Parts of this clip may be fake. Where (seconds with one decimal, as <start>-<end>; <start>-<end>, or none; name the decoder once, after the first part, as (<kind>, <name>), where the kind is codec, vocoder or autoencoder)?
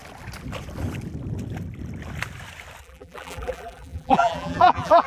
2.8-5.1 (vocoder, BigVGAN v2)